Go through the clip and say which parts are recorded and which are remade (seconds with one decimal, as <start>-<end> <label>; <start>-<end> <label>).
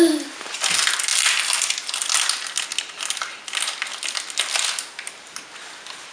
0.0-6.1 recorded